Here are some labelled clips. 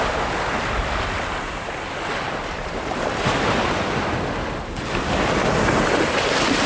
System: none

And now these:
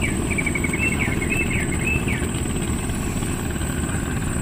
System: none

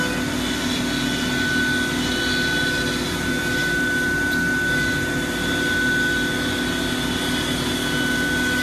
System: none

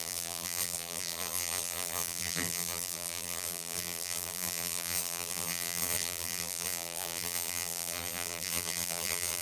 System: vocoder, BigVGAN v2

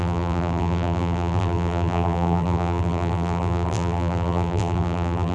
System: vocoder, BigVGAN v2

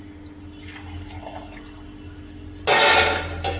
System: none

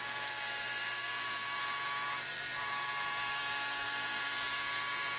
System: vocoder, BigVGAN v2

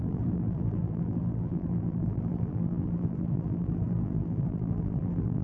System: vocoder, BigVGAN v2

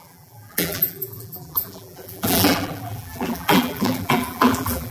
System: vocoder, BigVGAN v2